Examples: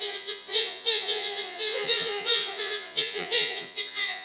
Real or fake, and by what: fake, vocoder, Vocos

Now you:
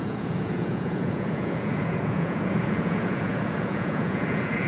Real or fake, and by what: fake, vocoder, Vocos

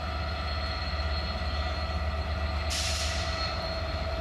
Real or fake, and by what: real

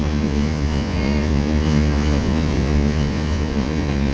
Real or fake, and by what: fake, vocoder, Vocos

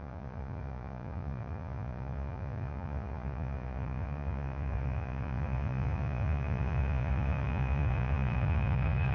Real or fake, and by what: fake, vocoder, Vocos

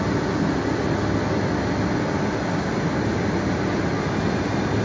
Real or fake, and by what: real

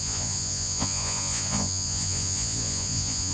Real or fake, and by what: fake, vocoder, Vocos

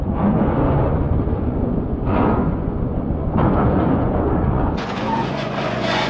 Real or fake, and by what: fake, vocoder, Vocos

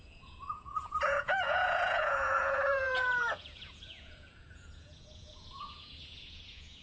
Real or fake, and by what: fake, vocoder, Vocos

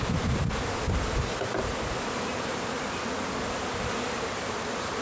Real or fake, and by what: real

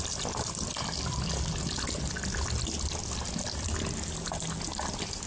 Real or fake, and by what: real